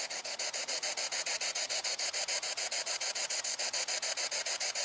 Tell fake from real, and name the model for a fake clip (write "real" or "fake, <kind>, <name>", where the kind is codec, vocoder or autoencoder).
fake, vocoder, Vocos